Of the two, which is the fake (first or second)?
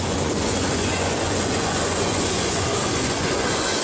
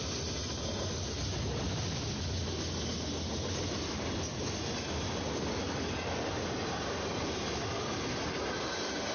first